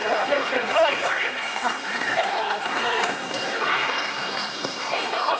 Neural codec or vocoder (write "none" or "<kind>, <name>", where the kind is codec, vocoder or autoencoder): codec, SNAC